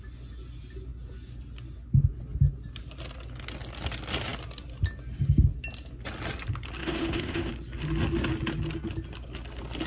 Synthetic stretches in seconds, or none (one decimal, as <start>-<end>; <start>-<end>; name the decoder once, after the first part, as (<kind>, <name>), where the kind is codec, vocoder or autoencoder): 6.8-7.5 (autoencoder, DAC-VAE)